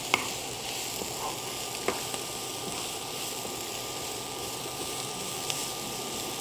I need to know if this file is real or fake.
real